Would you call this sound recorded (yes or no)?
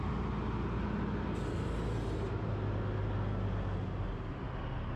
yes